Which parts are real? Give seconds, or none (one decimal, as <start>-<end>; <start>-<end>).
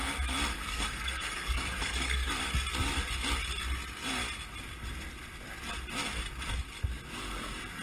0.0-0.5; 2.3-7.8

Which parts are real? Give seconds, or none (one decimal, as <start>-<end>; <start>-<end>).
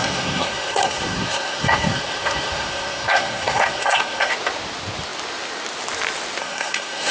4.3-6.4